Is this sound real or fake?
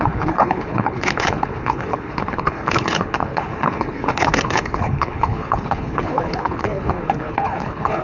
fake